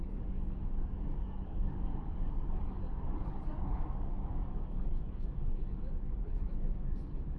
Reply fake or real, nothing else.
fake